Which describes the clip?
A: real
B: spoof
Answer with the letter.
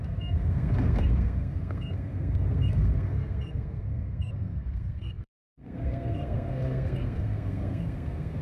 B